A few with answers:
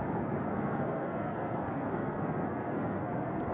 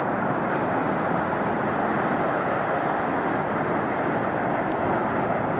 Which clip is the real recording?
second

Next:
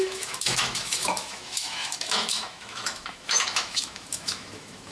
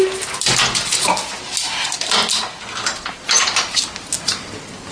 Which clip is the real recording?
second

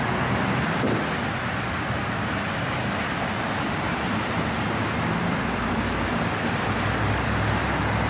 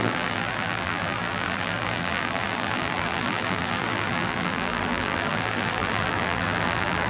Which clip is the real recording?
first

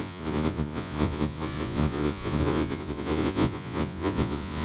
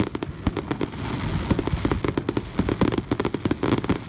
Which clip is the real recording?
second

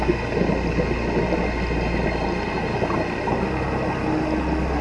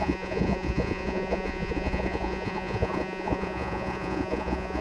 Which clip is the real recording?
first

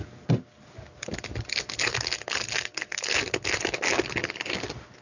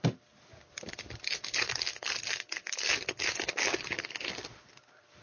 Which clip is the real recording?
first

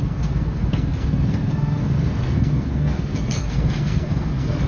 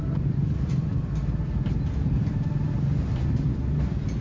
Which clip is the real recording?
second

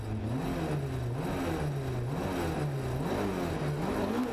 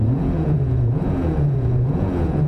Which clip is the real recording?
first